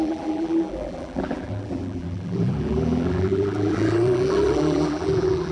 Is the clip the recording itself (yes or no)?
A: no